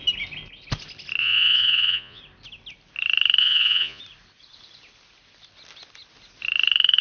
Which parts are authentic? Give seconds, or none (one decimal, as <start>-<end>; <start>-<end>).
0.0-1.2; 2.2-3.4; 4.0-7.0